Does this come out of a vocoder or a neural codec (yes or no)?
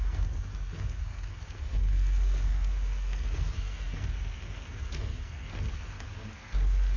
yes